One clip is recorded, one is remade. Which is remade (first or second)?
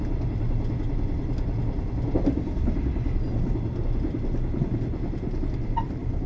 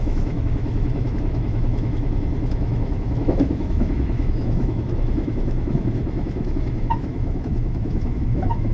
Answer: second